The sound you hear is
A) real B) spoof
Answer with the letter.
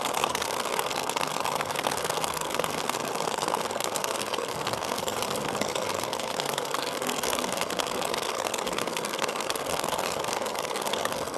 B